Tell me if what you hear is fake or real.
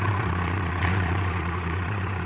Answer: fake